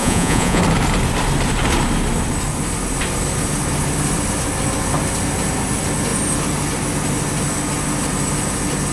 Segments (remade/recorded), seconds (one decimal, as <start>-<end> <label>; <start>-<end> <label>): 0.0-0.6 remade; 0.6-8.9 recorded